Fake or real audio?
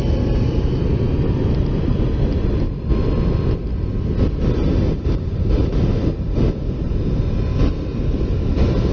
real